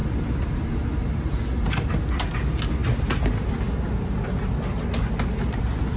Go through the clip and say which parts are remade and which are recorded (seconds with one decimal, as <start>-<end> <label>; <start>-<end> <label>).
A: 0.0-6.0 recorded